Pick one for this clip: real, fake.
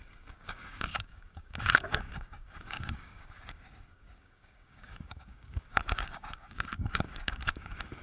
fake